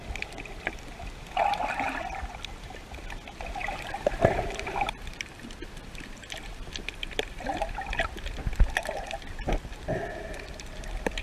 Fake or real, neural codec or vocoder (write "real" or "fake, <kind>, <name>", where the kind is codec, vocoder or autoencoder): real